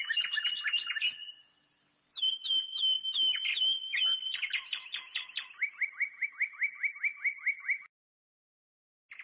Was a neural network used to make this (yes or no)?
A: no